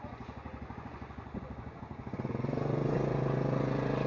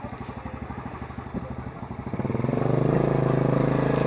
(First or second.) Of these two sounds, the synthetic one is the first